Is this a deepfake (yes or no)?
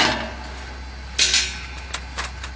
no